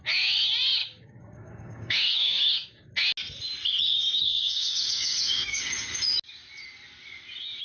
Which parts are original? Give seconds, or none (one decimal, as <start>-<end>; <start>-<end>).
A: 0.0-0.8; 2.9-3.9; 5.6-7.6